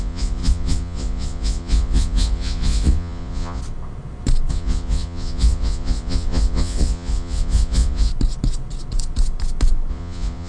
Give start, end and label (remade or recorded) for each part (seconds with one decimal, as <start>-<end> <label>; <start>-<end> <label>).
0.0-3.6 remade; 3.6-4.5 recorded; 4.5-8.1 remade; 8.1-9.9 recorded; 9.9-10.5 remade